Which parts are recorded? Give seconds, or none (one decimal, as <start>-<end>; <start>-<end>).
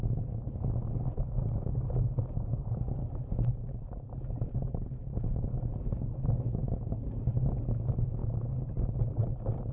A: 0.0-9.7